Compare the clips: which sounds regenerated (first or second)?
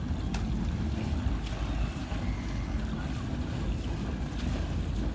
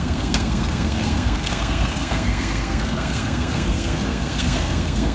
second